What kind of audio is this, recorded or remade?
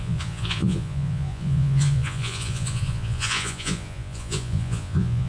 remade